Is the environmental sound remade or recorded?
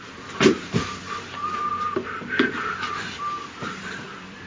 remade